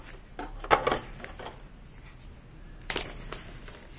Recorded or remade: recorded